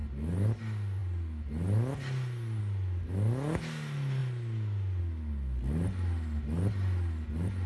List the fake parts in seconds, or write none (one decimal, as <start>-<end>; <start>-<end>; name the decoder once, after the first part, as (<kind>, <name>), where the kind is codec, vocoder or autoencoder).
none